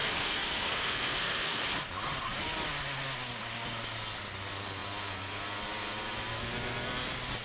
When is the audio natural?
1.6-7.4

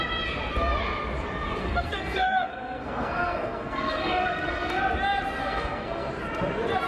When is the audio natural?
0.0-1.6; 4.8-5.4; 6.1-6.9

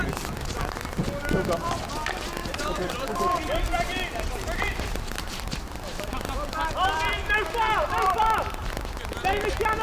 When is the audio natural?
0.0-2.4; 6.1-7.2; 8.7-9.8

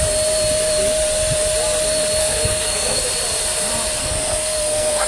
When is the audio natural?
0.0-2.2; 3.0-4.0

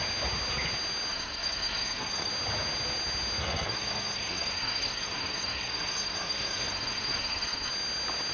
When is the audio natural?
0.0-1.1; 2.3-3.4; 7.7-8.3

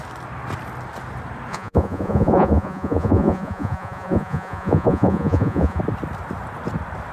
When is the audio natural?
0.0-1.5; 5.8-7.1

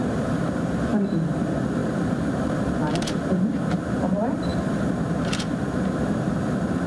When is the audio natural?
none